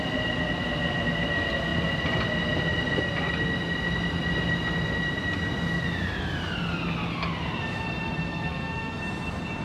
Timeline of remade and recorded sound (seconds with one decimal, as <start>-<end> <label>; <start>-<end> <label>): 0.0-8.3 recorded; 8.3-9.0 remade; 9.0-9.6 recorded